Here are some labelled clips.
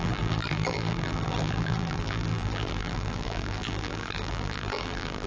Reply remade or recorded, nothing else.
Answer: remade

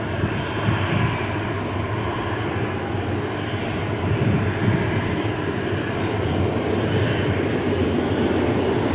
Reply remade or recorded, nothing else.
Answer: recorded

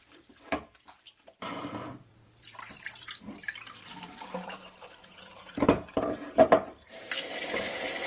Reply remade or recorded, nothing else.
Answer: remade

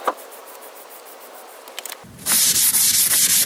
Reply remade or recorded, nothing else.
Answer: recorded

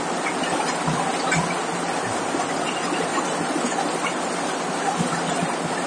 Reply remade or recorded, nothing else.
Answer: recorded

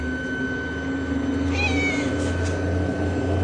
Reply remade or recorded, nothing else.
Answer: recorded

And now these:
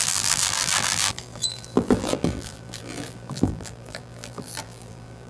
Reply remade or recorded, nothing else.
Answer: remade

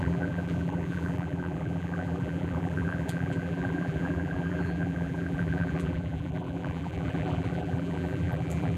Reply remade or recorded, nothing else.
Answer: remade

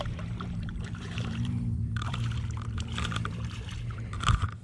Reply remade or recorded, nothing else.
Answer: remade